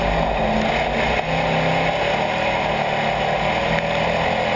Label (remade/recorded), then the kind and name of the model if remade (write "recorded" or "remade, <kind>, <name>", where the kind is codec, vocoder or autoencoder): recorded